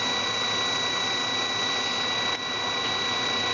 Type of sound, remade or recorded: recorded